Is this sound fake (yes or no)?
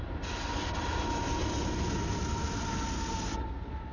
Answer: no